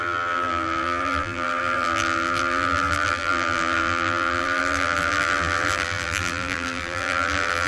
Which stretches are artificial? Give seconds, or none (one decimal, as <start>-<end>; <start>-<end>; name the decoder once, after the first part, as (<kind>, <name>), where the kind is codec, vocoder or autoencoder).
0.0-7.7 (vocoder, BigVGAN v2)